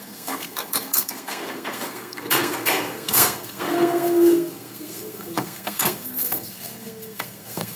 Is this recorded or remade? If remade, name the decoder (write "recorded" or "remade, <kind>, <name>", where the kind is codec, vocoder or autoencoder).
remade, codec, SNAC